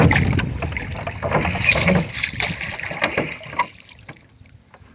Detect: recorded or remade recorded